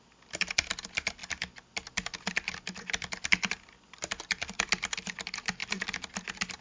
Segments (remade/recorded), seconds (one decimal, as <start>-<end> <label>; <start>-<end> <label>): 0.0-6.6 recorded